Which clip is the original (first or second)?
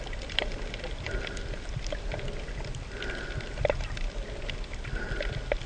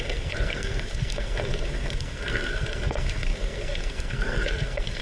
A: first